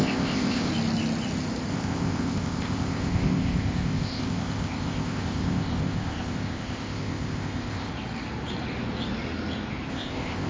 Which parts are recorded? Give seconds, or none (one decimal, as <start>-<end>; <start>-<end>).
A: 0.7-1.7; 7.9-9.9